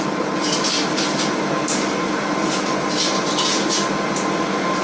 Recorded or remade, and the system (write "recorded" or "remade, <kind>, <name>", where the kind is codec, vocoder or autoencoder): recorded